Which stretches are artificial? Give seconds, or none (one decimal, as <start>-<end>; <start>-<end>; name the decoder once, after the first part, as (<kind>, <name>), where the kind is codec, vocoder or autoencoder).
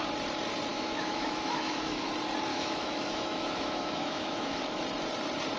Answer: 0.7-2.1 (autoencoder, DAC-VAE); 2.5-4.8